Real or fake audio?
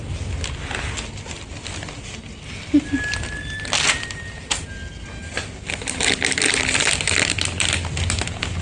real